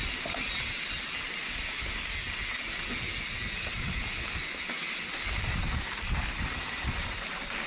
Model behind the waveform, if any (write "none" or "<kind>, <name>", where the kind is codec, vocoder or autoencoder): none